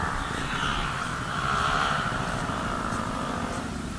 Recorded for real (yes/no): no